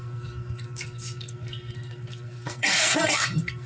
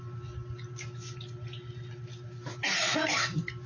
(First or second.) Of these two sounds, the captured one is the second